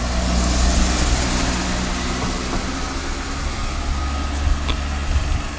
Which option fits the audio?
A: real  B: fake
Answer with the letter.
A